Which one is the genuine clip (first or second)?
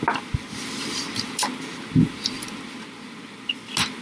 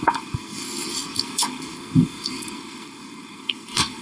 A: first